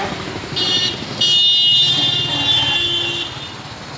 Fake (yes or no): no